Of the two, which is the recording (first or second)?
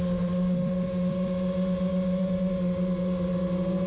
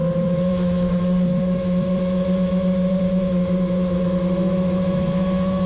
first